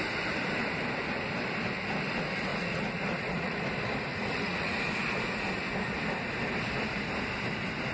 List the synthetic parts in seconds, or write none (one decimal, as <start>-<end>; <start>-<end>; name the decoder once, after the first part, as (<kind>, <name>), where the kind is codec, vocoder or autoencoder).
2.5-3.6 (vocoder, Vocos); 4.1-4.8